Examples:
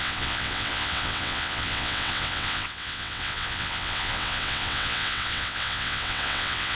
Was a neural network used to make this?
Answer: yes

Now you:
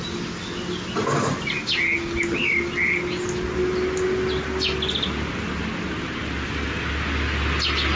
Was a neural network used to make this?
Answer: no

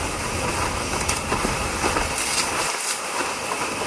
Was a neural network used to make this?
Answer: no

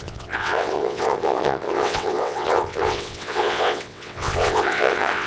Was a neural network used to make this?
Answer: yes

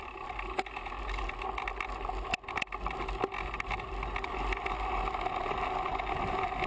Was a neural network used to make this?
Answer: no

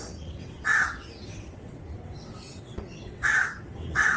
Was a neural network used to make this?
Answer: yes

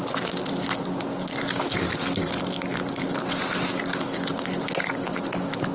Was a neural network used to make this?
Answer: no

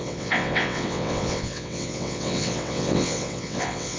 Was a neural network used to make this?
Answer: yes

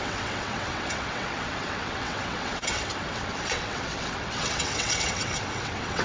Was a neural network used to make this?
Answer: yes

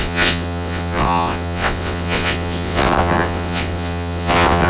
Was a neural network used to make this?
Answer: yes